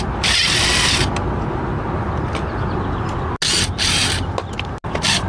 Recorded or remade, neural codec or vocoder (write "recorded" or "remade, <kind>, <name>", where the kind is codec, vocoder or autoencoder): recorded